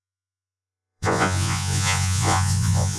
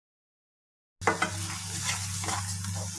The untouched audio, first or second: second